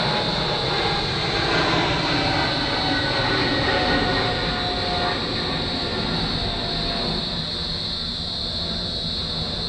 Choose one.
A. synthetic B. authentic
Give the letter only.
B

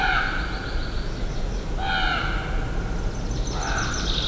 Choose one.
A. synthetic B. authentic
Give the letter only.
B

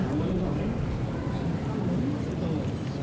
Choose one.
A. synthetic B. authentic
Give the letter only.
B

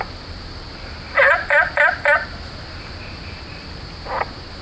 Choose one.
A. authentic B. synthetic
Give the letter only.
A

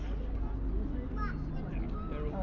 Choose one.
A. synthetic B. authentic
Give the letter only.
B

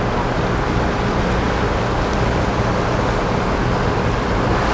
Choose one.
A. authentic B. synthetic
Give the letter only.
A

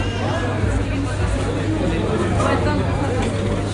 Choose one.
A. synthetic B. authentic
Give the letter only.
B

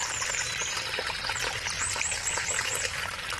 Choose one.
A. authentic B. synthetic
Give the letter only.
B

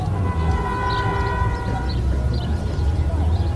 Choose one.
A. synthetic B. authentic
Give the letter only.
B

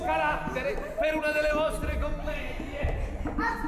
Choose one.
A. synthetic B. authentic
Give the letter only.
B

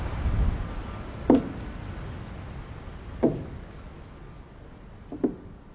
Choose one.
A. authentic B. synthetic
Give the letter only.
A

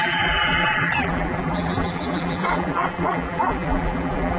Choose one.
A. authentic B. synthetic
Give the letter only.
B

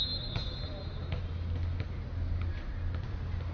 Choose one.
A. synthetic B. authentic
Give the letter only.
B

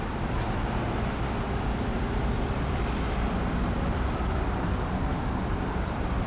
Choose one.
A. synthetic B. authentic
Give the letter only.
A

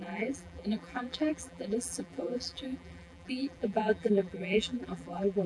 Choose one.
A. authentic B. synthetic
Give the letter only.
B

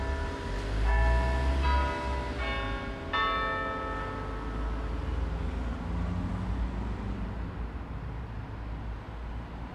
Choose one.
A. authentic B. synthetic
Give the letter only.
A